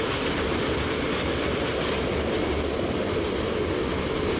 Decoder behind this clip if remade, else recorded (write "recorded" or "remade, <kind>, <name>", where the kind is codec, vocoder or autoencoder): recorded